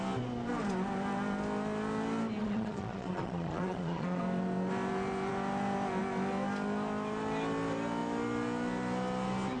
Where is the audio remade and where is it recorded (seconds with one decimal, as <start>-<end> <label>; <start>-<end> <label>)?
0.0-2.4 recorded; 2.4-4.2 remade; 4.2-9.6 recorded